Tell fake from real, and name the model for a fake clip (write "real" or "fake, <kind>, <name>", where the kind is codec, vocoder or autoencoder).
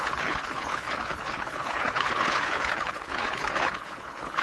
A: fake, codec, HILCodec